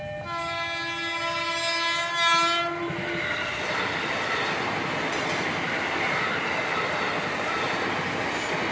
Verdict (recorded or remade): recorded